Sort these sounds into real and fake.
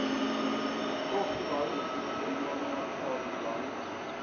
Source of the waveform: real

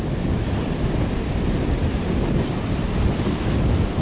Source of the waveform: real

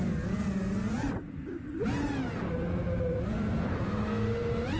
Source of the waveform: real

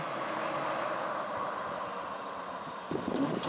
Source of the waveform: fake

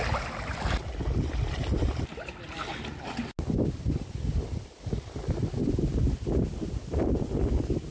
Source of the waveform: real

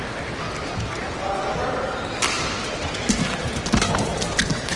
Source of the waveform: real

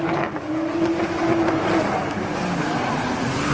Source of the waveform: real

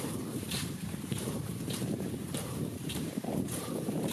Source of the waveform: fake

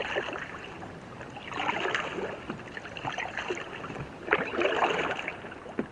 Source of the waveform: real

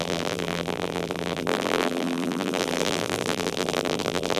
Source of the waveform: fake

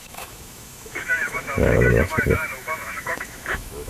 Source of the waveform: fake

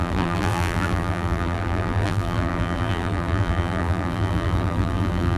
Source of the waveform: fake